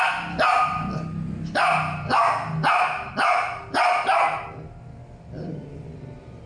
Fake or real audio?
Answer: real